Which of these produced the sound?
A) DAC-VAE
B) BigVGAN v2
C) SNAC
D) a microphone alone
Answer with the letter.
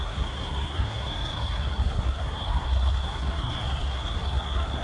C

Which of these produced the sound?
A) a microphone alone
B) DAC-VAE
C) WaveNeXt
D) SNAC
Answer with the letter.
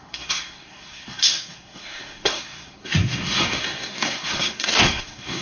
D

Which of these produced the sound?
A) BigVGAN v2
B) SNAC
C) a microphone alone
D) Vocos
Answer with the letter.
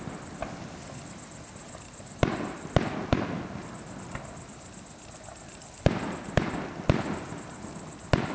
C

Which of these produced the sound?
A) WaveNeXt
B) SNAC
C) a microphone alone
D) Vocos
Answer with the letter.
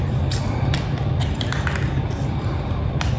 C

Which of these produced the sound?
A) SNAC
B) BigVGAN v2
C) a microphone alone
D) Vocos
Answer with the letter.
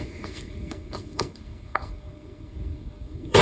A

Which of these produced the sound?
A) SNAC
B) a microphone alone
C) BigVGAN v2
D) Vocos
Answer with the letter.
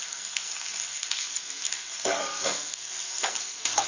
A